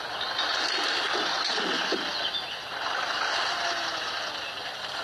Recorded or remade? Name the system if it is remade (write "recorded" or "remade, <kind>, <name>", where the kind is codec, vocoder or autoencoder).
recorded